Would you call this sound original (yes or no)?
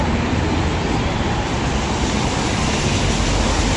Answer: yes